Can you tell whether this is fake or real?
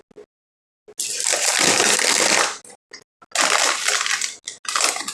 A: real